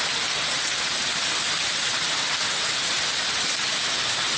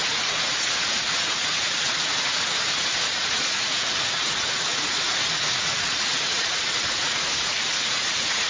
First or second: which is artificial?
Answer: second